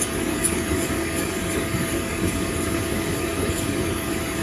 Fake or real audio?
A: fake